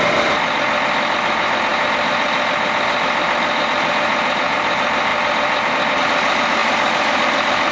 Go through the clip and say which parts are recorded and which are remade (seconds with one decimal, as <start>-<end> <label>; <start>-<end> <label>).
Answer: 0.0-7.7 recorded